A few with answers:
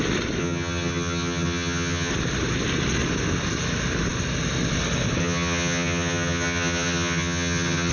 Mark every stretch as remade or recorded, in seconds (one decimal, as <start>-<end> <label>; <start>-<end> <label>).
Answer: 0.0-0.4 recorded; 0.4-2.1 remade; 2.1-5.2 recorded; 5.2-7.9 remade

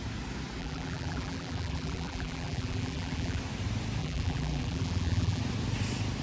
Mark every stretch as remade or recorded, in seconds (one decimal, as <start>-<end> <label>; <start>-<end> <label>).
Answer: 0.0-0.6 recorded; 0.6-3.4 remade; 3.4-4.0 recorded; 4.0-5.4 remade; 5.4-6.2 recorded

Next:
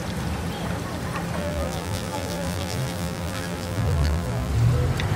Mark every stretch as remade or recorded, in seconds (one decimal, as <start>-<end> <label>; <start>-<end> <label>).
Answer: 0.0-1.4 recorded; 1.4-4.5 remade; 4.5-5.2 recorded

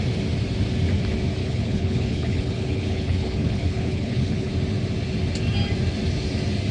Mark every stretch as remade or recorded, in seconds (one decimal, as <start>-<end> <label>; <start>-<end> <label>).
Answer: 0.0-1.4 recorded; 1.4-4.5 remade; 4.5-6.7 recorded

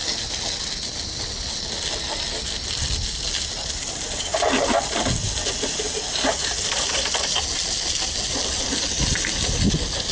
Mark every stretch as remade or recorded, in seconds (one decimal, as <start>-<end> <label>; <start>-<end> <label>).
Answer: 0.0-10.1 recorded

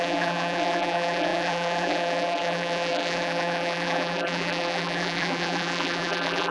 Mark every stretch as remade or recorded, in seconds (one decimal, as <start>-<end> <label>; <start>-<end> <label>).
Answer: 0.0-6.5 remade

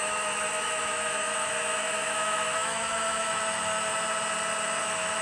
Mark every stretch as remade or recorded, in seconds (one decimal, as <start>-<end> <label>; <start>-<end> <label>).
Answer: 0.0-3.9 remade; 3.9-4.8 recorded; 4.8-5.2 remade